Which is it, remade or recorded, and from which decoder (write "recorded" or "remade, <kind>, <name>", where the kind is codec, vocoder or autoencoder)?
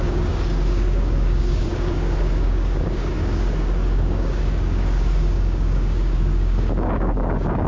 remade, codec, DAC